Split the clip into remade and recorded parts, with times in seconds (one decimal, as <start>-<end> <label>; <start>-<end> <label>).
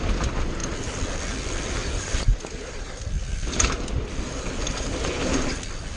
0.0-0.6 recorded; 0.6-1.1 remade; 1.1-1.8 recorded; 1.8-4.2 remade; 4.2-6.0 recorded